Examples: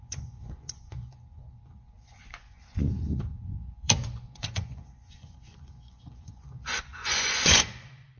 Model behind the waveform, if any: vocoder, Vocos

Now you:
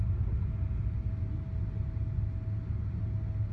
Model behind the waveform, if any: none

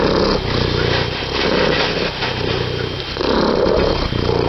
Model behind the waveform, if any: none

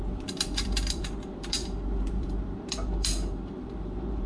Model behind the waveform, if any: vocoder, BigVGAN v2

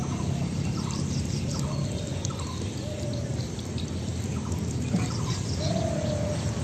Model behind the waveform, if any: vocoder, BigVGAN v2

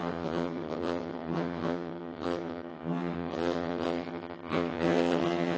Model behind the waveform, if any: vocoder, HiFi-GAN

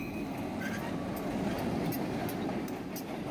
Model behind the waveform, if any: none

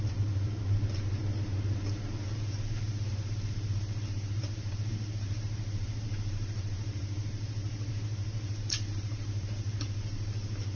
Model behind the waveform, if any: vocoder, BigVGAN v2